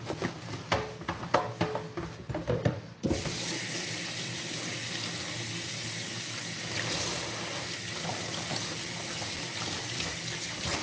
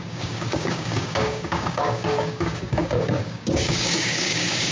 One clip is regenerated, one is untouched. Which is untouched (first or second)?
first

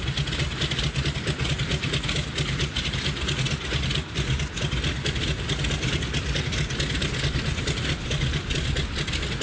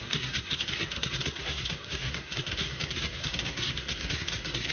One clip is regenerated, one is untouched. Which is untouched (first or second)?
first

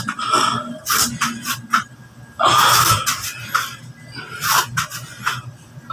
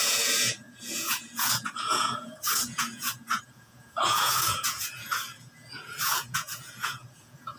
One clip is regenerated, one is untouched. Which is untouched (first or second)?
first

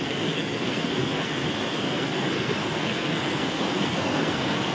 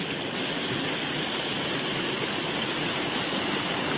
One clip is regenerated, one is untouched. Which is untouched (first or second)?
second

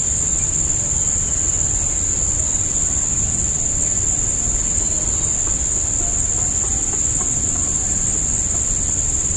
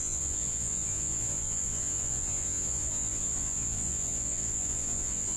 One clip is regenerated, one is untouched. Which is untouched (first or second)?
first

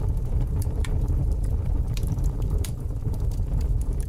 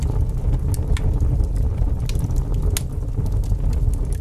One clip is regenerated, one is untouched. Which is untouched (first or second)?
second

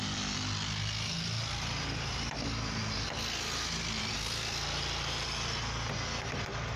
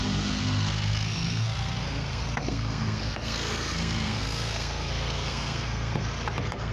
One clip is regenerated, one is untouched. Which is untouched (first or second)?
first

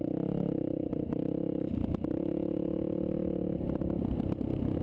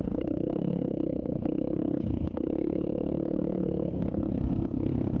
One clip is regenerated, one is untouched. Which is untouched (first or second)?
first